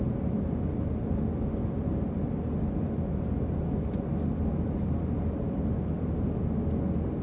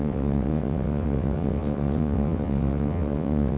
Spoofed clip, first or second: second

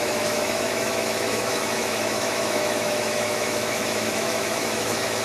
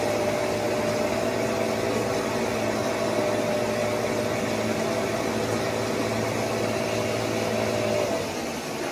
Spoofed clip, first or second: first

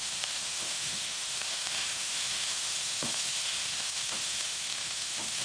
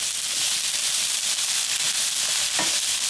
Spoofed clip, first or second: first